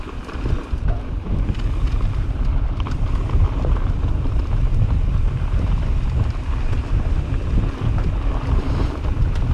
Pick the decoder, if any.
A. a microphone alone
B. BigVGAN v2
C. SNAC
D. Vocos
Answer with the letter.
B